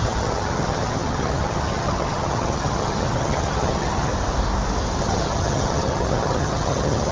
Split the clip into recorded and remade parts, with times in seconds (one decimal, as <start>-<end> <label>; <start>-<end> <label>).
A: 0.0-4.1 remade; 4.1-5.0 recorded; 5.0-7.1 remade